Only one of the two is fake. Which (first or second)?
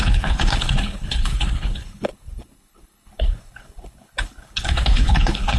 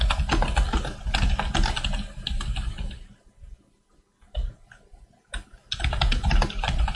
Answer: first